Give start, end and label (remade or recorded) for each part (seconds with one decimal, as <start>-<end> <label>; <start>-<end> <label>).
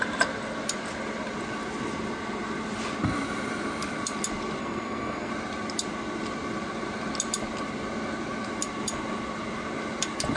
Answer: 0.0-4.6 recorded; 4.6-5.3 remade; 5.3-10.4 recorded